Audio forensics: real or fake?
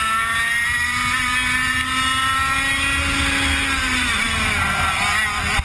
real